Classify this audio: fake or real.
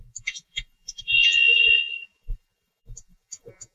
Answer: fake